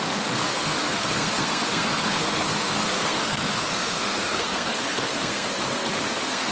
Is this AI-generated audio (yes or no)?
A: yes